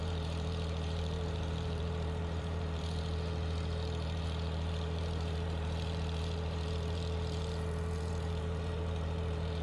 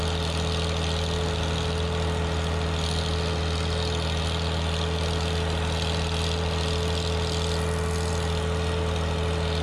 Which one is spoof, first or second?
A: first